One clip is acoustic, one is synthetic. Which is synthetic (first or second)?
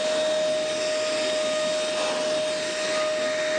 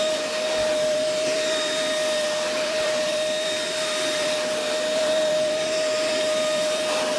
second